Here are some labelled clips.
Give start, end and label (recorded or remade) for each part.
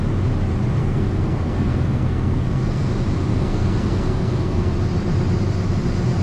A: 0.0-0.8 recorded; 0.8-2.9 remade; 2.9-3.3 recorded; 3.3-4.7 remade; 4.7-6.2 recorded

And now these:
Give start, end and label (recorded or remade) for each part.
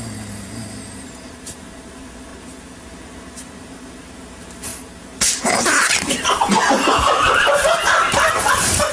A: 0.0-2.3 remade; 2.3-3.3 recorded; 3.3-4.7 remade; 4.7-5.4 recorded; 5.4-8.9 remade